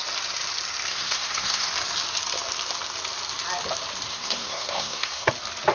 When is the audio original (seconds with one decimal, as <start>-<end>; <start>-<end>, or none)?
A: 0.0-0.9; 1.7-4.1; 5.3-5.7